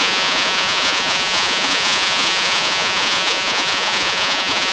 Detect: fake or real fake